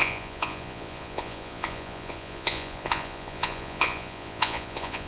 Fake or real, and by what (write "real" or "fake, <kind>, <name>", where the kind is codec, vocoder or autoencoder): fake, vocoder, Vocos